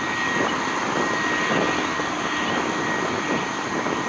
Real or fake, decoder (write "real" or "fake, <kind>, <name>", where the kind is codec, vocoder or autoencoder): real